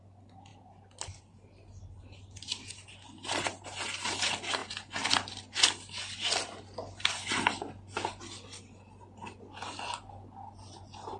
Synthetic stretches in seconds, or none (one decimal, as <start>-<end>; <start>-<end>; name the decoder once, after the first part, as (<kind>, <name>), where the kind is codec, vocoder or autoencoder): 0.0-0.5 (vocoder, BigVGAN v2); 1.2-11.2